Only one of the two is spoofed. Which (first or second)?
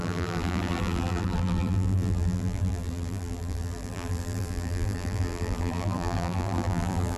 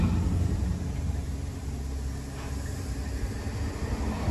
first